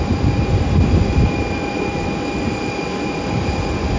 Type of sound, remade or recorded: recorded